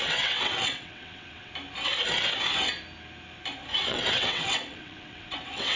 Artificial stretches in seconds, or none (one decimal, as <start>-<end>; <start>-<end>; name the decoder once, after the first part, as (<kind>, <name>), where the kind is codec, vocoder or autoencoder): 0.0-1.5 (vocoder, WaveNeXt); 3.8-5.8